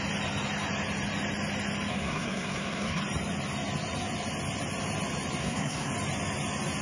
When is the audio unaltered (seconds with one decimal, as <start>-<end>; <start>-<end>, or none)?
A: 0.0-1.9; 3.0-5.4; 5.9-6.8